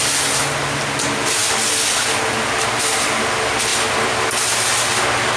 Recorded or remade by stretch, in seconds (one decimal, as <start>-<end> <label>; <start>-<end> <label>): 0.0-5.4 recorded